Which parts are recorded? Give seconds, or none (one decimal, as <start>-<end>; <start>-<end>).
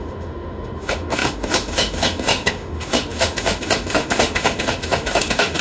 none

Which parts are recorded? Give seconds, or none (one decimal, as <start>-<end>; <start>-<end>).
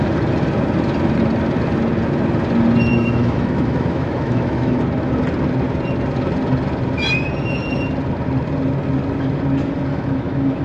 0.0-2.9; 4.8-9.9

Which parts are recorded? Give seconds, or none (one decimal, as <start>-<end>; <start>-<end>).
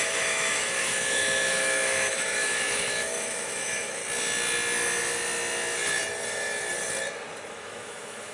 4.0-7.5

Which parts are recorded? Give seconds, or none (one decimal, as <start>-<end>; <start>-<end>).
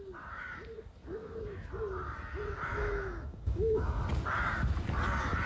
0.0-1.2; 1.7-2.7; 4.0-5.5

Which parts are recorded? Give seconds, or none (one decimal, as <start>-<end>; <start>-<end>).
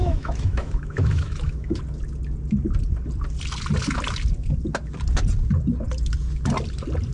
1.8-7.1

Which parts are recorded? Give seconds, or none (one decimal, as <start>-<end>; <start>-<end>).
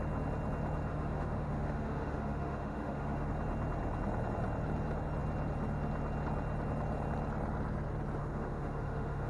0.0-0.9; 3.3-8.2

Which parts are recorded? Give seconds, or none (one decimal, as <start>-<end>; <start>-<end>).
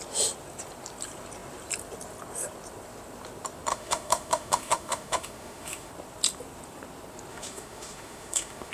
0.0-3.7; 5.9-7.3